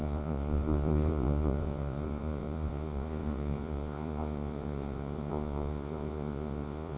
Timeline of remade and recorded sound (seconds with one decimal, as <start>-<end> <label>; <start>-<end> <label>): 0.0-7.0 remade